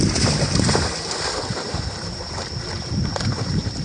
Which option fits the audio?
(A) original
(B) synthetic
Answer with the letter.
B